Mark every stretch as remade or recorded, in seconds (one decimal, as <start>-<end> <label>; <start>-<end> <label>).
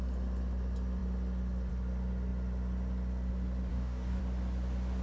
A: 0.0-3.7 recorded; 3.7-4.2 remade; 4.2-5.0 recorded